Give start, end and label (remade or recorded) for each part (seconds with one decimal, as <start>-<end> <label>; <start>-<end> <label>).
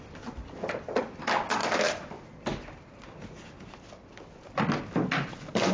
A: 0.0-5.7 recorded